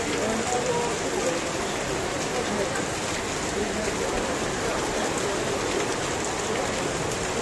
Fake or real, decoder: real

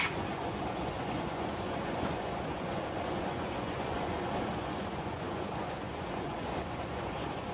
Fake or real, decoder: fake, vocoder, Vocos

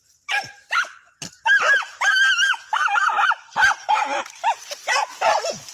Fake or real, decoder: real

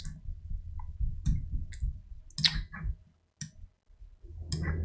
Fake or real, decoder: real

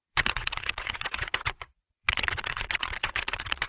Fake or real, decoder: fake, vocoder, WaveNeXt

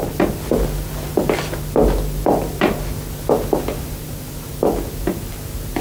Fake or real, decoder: real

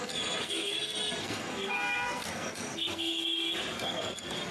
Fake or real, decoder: fake, codec, SNAC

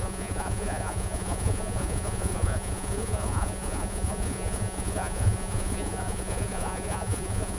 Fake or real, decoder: fake, vocoder, Vocos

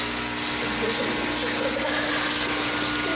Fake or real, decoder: real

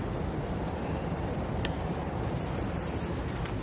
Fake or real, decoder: fake, vocoder, BigVGAN v2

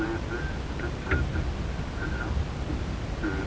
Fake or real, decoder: real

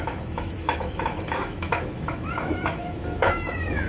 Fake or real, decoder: fake, autoencoder, DAC-VAE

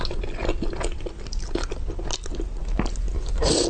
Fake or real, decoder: real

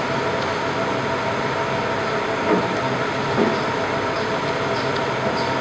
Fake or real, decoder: fake, vocoder, BigVGAN v2